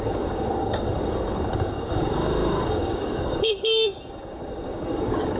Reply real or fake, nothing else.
fake